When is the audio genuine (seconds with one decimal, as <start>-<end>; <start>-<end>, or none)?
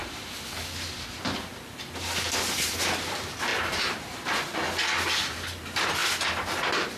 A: 0.0-7.0